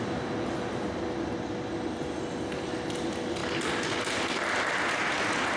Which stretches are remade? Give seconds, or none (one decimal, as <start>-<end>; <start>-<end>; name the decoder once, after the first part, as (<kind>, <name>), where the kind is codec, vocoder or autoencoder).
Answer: none